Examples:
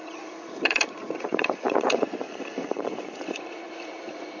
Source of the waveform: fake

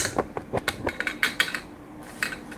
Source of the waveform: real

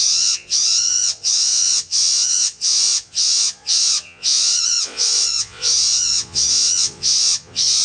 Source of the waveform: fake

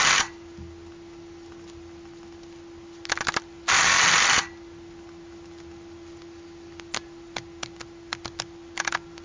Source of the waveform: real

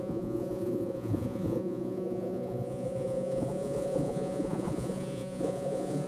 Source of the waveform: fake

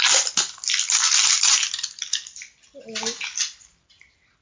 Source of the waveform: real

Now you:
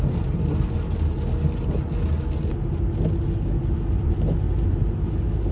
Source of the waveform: real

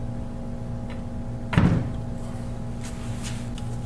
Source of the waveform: real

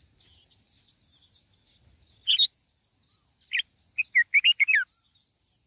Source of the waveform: real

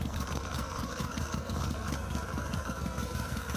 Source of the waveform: fake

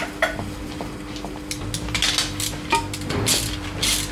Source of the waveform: real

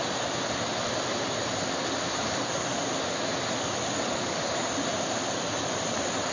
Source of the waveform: real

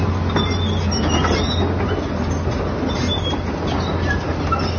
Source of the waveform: real